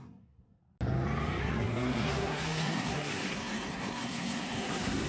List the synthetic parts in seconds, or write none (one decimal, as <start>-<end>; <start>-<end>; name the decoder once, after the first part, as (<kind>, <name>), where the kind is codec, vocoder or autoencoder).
0.0-0.6 (codec, SNAC); 1.4-5.1